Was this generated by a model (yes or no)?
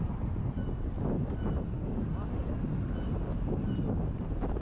no